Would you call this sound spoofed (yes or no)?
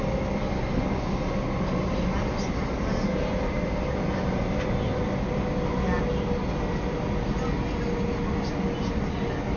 no